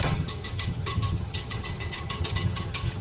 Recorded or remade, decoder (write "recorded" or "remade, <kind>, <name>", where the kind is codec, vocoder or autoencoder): remade, vocoder, HiFi-GAN